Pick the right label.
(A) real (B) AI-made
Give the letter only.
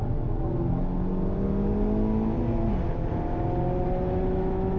A